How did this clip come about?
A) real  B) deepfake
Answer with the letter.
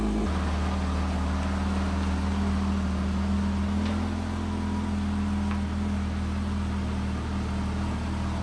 A